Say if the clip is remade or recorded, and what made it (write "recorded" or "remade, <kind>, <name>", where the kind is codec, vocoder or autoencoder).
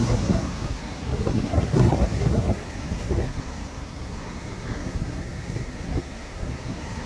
remade, codec, SNAC